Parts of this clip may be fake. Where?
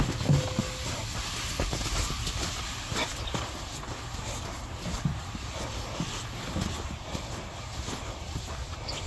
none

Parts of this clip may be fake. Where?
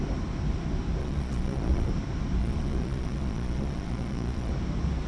1.0-1.9 (vocoder, Vocos); 2.4-4.5